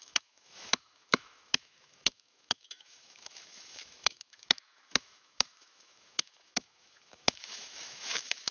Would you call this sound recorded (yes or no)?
no